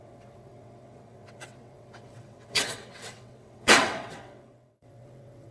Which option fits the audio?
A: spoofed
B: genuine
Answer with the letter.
A